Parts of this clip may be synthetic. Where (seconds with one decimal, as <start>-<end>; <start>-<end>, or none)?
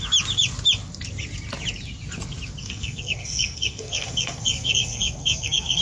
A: 2.6-5.8